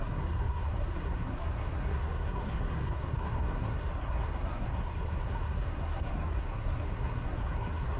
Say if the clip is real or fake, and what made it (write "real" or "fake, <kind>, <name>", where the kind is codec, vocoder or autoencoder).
fake, codec, SNAC